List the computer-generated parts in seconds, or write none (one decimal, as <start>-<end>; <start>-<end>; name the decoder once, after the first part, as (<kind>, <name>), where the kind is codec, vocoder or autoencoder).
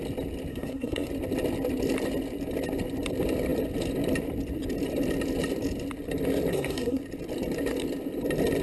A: 0.5-1.1 (codec, SNAC); 6.5-7.0